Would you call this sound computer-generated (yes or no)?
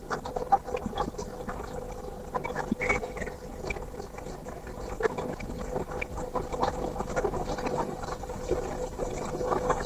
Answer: no